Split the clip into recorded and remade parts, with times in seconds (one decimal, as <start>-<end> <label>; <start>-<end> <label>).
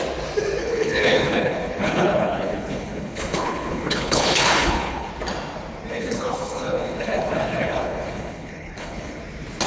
0.0-0.6 recorded; 0.6-5.1 remade; 5.1-5.9 recorded; 5.9-9.2 remade; 9.2-9.7 recorded